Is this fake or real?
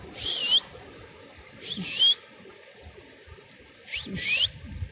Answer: real